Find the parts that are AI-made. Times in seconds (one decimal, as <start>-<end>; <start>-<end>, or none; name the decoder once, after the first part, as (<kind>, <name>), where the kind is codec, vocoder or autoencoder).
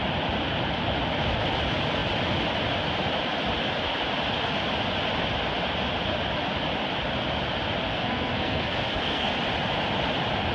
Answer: 7.9-9.3 (codec, SNAC)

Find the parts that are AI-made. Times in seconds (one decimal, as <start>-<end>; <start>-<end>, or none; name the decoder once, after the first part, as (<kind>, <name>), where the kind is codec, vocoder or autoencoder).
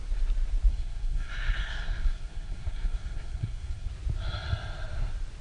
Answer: 0.7-3.9 (codec, SNAC)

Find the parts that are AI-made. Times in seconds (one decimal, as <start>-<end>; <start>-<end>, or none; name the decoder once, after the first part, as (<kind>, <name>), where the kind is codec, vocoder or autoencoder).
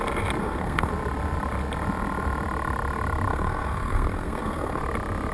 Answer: 0.4-0.9 (codec, SNAC); 3.3-4.8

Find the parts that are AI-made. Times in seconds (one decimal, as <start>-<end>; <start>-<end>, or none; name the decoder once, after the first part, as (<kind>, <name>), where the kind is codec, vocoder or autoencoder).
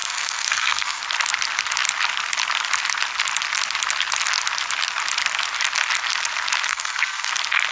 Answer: 0.0-1.0 (codec, SNAC); 6.7-7.3